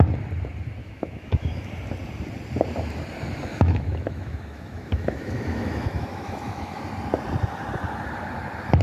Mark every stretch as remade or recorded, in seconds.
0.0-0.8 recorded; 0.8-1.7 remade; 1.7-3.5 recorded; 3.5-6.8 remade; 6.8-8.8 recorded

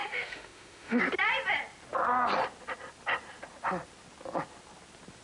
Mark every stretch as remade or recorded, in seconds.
0.0-1.0 remade; 1.0-5.2 recorded

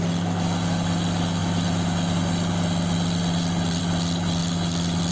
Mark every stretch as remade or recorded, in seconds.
0.0-5.1 recorded